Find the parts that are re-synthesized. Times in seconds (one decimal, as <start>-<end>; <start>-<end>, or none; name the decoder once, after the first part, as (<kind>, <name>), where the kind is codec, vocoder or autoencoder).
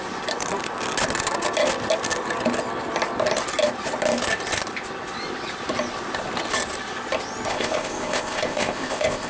7.5-9.3 (codec, ZipCodec)